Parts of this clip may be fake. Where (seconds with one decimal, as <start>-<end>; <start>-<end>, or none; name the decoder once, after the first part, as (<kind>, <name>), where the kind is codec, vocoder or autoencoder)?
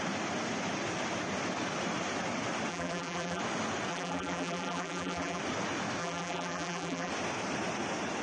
2.7-3.4 (vocoder, BigVGAN v2); 3.9-5.4; 6.0-7.1